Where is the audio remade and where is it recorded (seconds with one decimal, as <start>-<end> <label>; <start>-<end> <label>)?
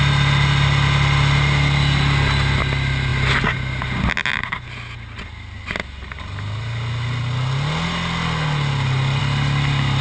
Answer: 0.0-10.0 recorded